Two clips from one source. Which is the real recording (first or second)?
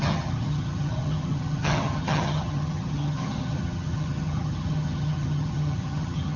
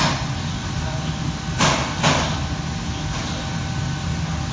second